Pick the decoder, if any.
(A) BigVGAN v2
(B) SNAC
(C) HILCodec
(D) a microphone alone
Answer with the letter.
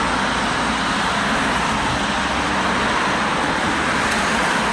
D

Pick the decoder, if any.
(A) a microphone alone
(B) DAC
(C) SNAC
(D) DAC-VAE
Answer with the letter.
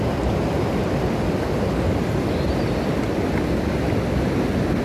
A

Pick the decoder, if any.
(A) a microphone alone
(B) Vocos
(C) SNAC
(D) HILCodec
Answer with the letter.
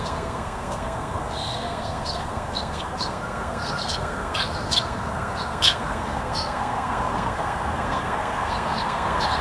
C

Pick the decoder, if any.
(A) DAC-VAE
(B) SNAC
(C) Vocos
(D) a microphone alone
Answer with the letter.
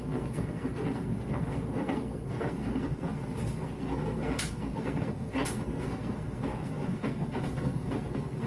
B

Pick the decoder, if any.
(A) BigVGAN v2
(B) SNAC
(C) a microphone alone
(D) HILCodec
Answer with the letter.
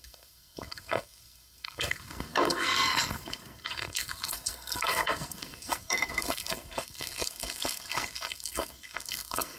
B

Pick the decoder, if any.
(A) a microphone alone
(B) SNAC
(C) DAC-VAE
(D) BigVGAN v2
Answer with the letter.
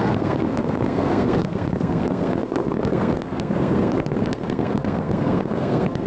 B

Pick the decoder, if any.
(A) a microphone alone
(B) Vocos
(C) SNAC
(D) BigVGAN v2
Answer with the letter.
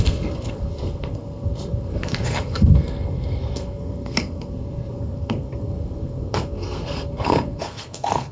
C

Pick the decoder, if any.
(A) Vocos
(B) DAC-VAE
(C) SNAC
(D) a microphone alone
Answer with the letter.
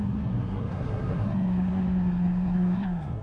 C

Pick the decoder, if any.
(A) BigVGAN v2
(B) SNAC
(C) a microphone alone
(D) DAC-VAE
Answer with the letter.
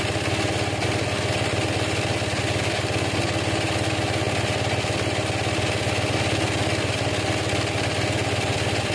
C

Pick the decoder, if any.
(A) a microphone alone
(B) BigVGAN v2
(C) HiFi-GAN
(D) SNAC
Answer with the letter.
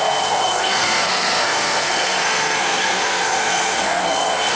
D